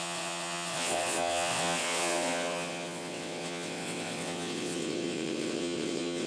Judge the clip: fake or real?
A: fake